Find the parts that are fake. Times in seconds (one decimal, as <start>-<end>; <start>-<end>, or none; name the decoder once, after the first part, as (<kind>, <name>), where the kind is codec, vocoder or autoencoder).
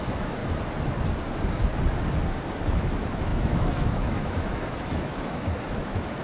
0.0-0.4 (autoencoder, DAC-VAE); 2.6-6.2